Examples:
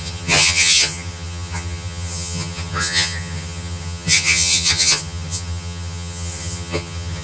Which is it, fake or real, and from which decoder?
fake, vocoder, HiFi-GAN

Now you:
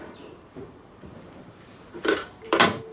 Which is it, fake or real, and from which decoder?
fake, vocoder, BigVGAN v2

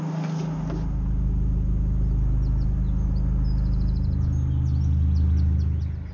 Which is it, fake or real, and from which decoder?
real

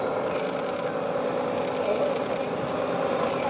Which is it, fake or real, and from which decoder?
real